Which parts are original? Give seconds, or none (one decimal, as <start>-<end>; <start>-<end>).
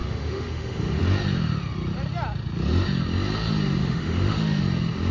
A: 1.0-3.8; 4.6-5.1